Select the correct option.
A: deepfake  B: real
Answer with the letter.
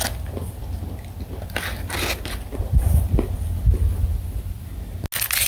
B